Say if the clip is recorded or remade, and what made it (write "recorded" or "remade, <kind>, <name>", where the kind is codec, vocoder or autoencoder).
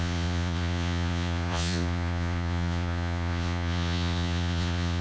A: remade, vocoder, Vocos